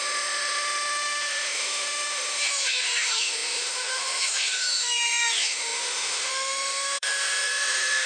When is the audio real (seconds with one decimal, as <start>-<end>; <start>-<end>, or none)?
none